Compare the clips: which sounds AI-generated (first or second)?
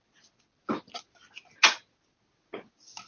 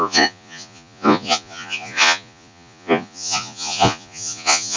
second